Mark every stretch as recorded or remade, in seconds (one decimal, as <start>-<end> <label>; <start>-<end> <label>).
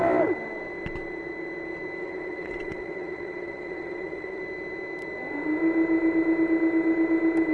0.0-2.0 recorded; 2.0-4.4 remade; 4.4-7.5 recorded